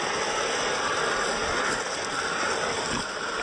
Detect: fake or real real